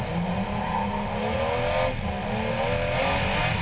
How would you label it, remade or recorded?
recorded